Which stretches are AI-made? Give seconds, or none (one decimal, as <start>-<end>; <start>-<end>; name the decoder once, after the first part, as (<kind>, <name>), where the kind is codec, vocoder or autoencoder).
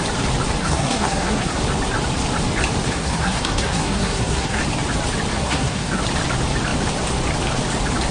0.6-1.6 (codec, SNAC); 2.9-4.6; 5.3-6.0